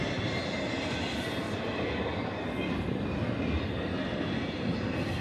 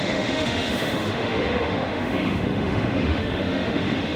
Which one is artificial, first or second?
second